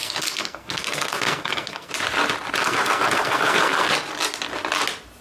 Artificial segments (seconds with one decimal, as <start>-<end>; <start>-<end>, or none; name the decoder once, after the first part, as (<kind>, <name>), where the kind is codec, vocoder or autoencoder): 0.0-1.9 (codec, SNAC); 2.6-3.9